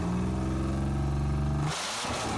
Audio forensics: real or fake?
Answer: real